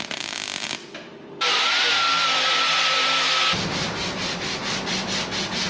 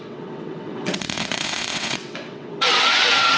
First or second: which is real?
first